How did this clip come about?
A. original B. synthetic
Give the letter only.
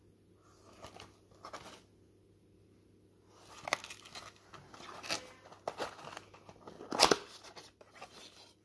A